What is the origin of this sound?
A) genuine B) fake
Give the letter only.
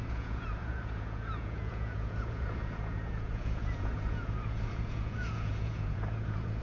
B